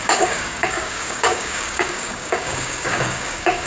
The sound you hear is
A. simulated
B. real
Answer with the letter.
A